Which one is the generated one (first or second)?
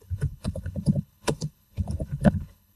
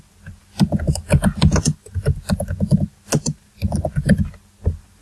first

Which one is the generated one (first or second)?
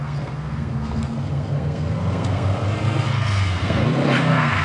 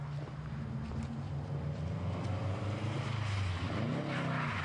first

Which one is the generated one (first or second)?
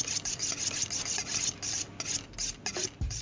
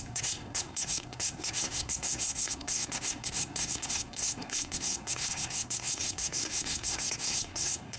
second